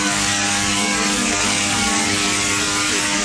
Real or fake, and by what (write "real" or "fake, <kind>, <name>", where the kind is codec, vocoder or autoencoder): fake, codec, DAC